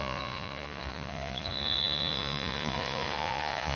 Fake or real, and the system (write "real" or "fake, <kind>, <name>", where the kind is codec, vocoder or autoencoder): fake, vocoder, Vocos